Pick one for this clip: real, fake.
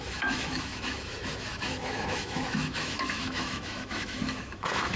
fake